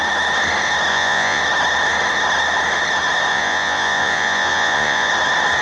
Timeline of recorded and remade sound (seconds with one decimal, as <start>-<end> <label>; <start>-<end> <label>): 0.0-0.9 recorded; 0.9-1.4 remade; 1.4-3.3 recorded; 3.3-5.1 remade; 5.1-5.6 recorded